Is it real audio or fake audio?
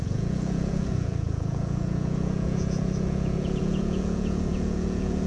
fake